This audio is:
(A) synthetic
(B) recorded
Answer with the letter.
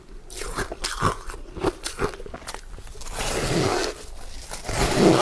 B